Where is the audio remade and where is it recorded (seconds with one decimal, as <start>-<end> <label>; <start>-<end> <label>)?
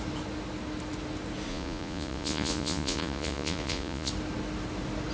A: 0.0-1.5 recorded; 1.5-4.1 remade; 4.1-5.1 recorded